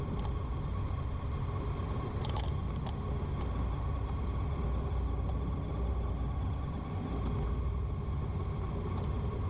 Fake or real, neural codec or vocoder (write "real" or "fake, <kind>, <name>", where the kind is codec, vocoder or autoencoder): real